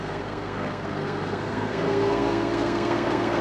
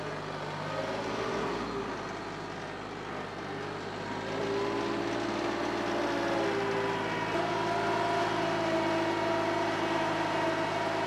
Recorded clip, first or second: second